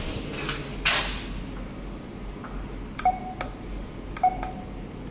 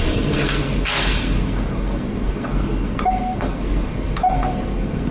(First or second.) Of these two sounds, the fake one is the second